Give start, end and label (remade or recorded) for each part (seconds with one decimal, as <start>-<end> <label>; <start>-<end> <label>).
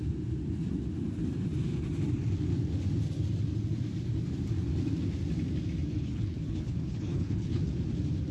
0.0-5.9 recorded; 5.9-7.6 remade; 7.6-8.3 recorded